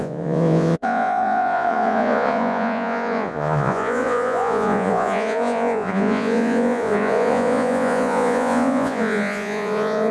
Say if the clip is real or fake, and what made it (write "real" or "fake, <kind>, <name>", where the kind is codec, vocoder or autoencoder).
fake, vocoder, Vocos